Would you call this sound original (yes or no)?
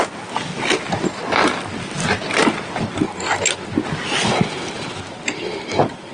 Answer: yes